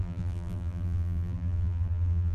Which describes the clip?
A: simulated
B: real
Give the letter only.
A